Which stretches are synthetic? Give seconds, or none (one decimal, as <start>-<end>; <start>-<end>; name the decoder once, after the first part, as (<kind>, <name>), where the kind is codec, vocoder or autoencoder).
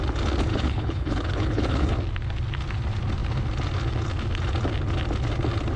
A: 0.5-1.9 (codec, HILCodec)